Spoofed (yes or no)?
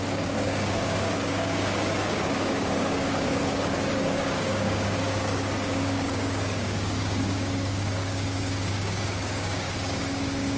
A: yes